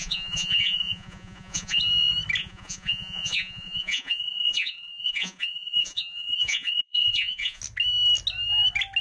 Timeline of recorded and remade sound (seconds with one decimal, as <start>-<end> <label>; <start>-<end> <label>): 0.0-1.8 remade; 1.8-2.4 recorded; 2.4-7.6 remade; 7.6-9.0 recorded